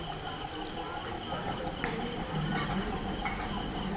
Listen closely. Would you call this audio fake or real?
real